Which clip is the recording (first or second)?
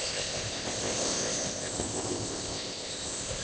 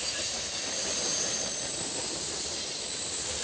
second